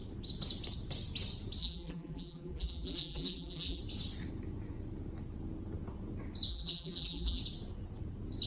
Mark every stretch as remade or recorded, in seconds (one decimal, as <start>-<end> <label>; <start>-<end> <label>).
0.0-1.6 recorded; 1.6-3.8 remade; 3.8-6.5 recorded; 6.5-7.4 remade; 7.4-8.5 recorded